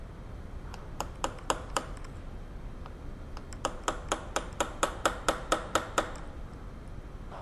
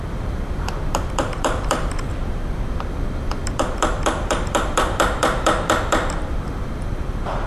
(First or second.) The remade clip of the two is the second